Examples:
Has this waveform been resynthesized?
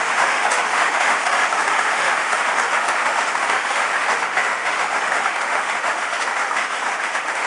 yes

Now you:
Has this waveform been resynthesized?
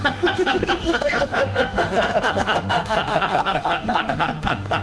yes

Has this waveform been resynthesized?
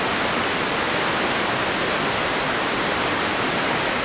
no